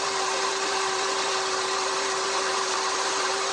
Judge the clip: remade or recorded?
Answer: remade